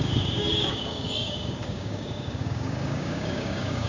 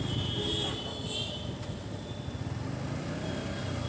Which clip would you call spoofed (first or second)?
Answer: first